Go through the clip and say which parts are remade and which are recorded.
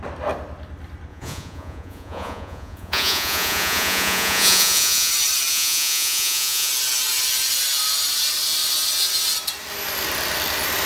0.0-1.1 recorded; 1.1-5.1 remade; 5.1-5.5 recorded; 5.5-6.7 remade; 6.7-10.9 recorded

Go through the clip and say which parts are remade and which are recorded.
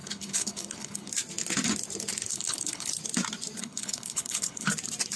0.0-1.1 remade; 1.1-2.3 recorded; 2.3-2.9 remade; 2.9-3.6 recorded; 3.6-4.7 remade; 4.7-5.2 recorded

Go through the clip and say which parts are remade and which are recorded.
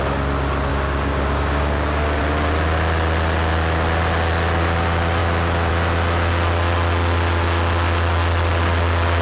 0.0-0.7 recorded; 0.7-2.2 remade; 2.2-9.2 recorded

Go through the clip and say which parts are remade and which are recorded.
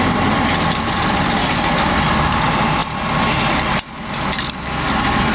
0.0-5.3 recorded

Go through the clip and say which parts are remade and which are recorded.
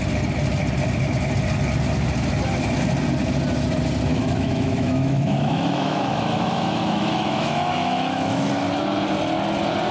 0.0-4.1 recorded; 4.1-8.5 remade; 8.5-9.9 recorded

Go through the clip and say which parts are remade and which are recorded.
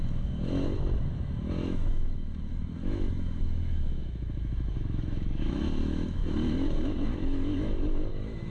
0.0-8.5 remade